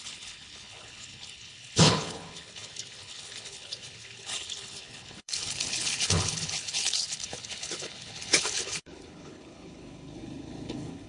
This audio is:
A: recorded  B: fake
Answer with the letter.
B